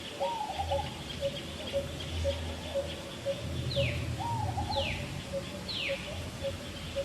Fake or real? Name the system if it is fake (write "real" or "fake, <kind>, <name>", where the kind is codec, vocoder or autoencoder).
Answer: real